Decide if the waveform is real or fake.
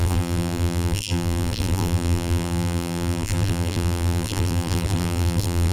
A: fake